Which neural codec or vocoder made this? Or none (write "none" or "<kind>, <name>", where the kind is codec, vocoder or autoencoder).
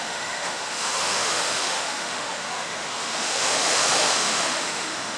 autoencoder, DAC-VAE